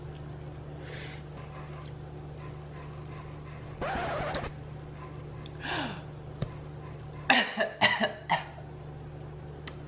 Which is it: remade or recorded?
recorded